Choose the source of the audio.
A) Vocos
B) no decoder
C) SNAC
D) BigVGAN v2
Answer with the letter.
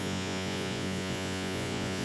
A